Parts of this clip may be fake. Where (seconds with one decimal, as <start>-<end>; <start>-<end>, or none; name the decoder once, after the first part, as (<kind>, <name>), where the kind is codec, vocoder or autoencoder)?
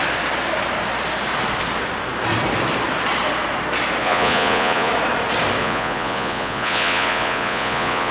4.0-4.9 (vocoder, Vocos); 5.6-8.1